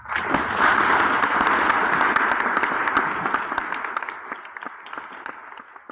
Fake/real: real